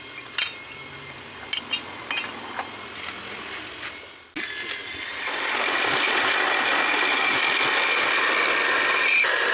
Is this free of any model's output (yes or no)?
yes